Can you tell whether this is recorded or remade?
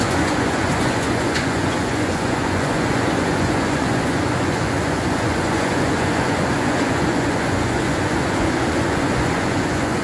remade